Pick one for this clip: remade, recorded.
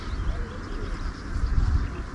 recorded